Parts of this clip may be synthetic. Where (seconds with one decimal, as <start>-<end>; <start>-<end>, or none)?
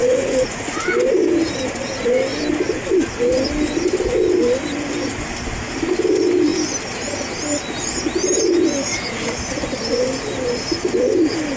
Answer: 0.0-0.6